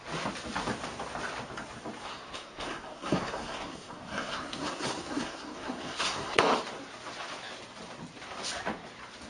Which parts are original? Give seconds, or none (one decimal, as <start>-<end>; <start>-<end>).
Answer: 0.0-2.0; 6.4-9.3